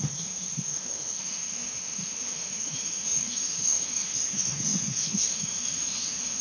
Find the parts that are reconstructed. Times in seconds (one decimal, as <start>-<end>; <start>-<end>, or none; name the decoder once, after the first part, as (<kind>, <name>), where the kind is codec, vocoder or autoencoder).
0.0-6.4 (autoencoder, DAC-VAE)